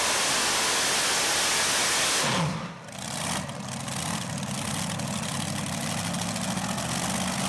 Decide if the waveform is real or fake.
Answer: real